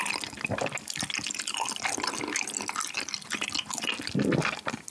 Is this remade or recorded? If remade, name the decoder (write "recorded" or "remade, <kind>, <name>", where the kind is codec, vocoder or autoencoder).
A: recorded